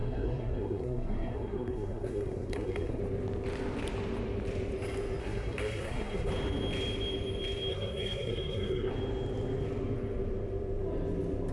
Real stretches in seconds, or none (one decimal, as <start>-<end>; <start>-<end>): 3.0-5.2; 6.3-7.7; 8.9-11.5